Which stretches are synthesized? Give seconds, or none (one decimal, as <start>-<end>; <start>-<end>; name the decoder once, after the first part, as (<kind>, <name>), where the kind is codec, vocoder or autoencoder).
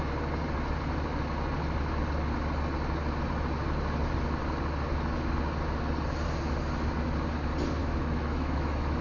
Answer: 7.8-9.0 (autoencoder, DAC-VAE)